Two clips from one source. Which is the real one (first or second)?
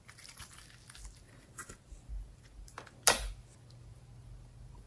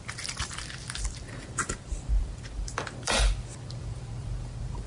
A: first